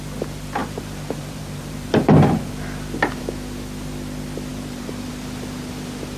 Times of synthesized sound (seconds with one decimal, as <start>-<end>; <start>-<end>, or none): 0.6-2.5; 4.5-5.1